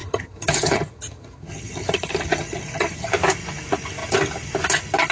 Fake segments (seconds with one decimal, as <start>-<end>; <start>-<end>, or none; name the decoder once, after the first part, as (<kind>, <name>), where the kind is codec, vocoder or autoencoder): 0.0-3.1 (vocoder, HiFi-GAN)